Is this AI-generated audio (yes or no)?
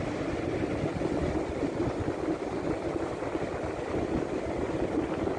no